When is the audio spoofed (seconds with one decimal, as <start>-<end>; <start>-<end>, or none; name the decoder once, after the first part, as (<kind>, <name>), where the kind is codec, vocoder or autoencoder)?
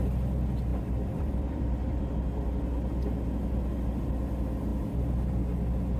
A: 0.7-2.1 (vocoder, BigVGAN v2)